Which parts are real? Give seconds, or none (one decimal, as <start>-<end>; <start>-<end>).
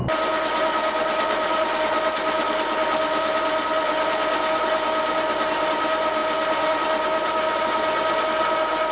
0.0-8.9